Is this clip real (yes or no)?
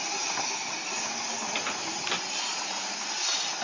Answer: yes